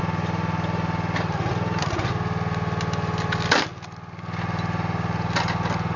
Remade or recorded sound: recorded